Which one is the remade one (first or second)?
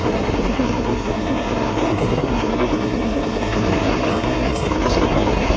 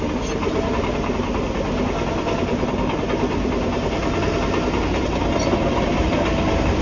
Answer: first